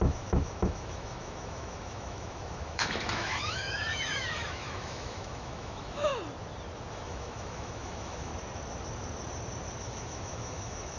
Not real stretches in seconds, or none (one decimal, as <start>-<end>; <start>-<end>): 0.0-6.1; 6.9-8.3; 9.8-11.0